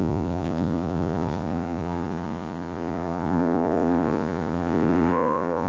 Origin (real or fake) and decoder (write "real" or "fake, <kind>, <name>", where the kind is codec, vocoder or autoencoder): fake, vocoder, Vocos